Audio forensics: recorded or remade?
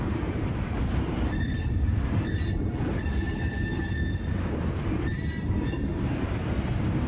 remade